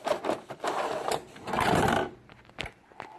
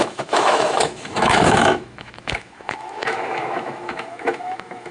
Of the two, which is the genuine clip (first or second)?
first